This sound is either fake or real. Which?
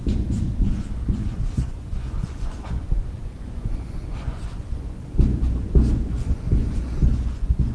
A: fake